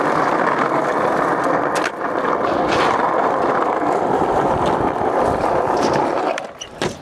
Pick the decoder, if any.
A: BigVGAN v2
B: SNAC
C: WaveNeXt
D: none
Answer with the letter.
A